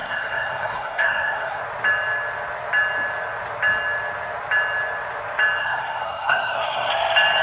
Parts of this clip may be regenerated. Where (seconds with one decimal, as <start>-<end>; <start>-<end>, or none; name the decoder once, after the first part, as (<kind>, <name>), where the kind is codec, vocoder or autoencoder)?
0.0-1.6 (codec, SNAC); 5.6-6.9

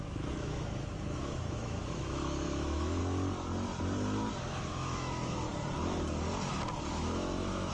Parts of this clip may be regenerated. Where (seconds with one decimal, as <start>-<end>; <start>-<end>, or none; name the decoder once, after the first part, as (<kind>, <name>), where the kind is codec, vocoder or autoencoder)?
0.0-3.0 (autoencoder, DAC-VAE); 4.4-5.5; 6.9-7.7

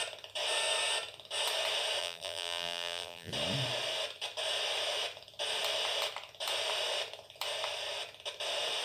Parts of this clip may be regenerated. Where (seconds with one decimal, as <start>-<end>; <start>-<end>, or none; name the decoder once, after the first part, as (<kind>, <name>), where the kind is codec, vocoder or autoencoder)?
2.0-3.3 (vocoder, BigVGAN v2)

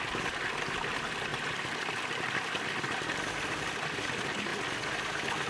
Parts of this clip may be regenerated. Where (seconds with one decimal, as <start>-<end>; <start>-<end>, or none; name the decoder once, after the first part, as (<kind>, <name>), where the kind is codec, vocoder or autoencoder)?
1.3-4.0 (vocoder, BigVGAN v2)

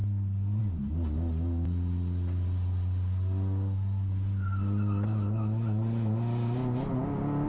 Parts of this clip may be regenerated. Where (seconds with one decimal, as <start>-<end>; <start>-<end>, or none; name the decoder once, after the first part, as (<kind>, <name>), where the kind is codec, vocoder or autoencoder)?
none

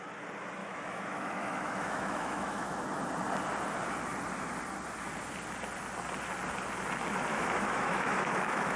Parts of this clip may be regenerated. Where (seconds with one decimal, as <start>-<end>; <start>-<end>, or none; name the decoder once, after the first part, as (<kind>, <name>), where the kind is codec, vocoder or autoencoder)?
0.6-2.8 (autoencoder, DAC-VAE); 7.3-8.8

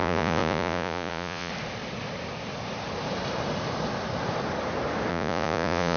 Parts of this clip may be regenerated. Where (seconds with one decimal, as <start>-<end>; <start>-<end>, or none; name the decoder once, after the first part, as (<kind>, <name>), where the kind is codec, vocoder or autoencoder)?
0.0-1.5 (vocoder, Vocos); 5.1-6.0